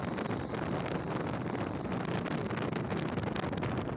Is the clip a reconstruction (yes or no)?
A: no